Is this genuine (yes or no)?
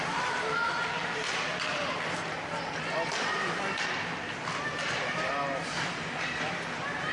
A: yes